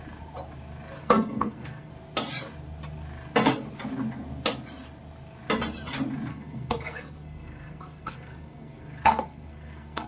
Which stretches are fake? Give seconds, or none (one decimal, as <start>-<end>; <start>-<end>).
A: 1.0-1.9; 6.3-10.1